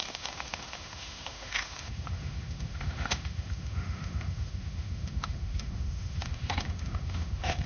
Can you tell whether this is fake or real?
fake